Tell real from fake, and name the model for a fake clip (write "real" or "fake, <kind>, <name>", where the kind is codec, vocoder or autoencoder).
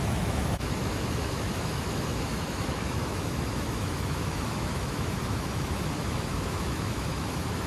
fake, autoencoder, DAC-VAE